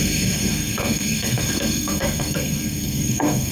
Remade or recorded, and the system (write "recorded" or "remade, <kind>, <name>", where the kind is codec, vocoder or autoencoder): remade, codec, SNAC